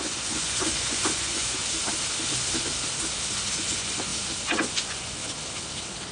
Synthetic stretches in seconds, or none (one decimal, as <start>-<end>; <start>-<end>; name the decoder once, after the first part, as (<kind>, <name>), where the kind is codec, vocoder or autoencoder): 0.0-1.6 (vocoder, Vocos); 3.5-4.1; 4.7-5.2